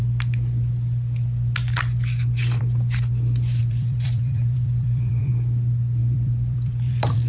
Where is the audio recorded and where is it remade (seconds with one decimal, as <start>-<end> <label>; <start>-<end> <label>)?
0.0-3.6 recorded; 3.6-5.3 remade; 5.3-6.0 recorded; 6.0-7.3 remade